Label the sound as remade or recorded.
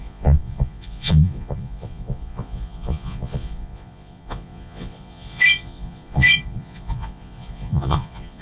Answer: remade